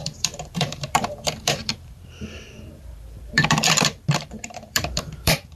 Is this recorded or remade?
remade